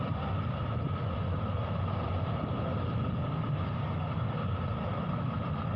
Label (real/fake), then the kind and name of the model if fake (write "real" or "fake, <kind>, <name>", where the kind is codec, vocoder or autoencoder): fake, vocoder, BigVGAN v2